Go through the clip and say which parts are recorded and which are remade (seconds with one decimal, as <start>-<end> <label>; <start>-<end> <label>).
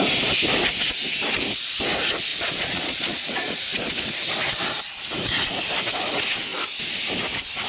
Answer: 0.0-2.3 recorded; 2.3-3.6 remade; 3.6-7.7 recorded